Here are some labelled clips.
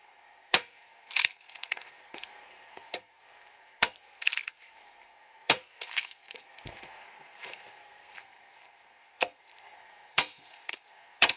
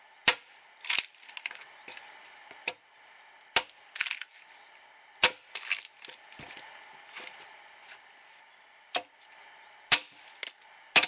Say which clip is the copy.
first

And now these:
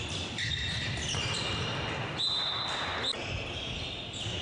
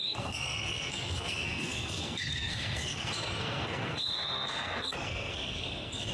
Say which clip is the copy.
second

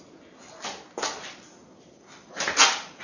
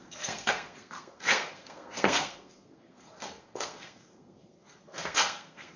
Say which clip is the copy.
second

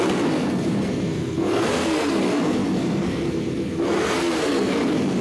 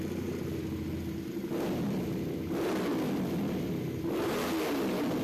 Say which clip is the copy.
first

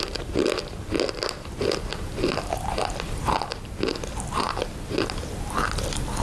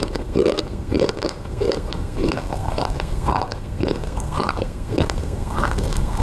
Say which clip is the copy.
second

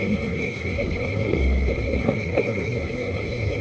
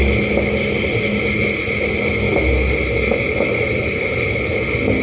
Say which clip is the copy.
first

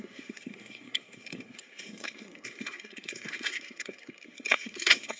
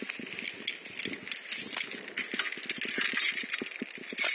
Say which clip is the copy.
first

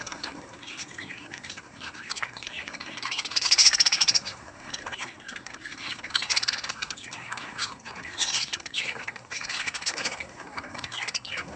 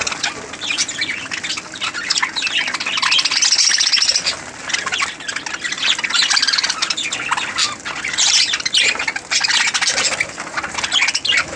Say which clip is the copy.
first